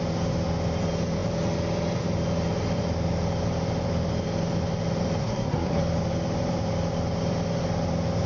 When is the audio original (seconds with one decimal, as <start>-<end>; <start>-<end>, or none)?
0.0-5.2; 5.8-8.3